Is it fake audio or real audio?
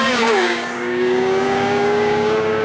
fake